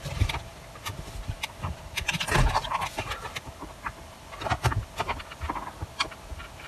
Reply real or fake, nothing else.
real